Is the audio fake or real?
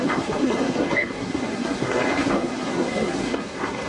fake